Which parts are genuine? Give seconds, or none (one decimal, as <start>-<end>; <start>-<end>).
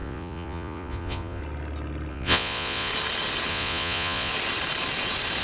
1.4-2.1; 2.9-3.5; 4.3-5.4